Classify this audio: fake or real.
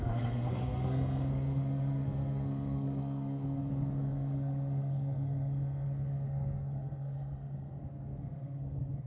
fake